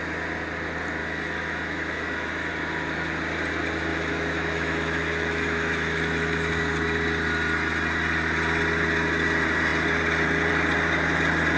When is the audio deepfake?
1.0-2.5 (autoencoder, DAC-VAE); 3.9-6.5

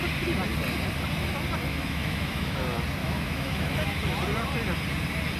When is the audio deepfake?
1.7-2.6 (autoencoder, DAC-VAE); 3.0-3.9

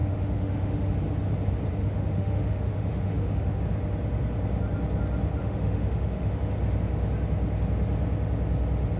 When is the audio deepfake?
0.0-0.9 (autoencoder, DAC-VAE); 1.8-3.6; 5.4-6.4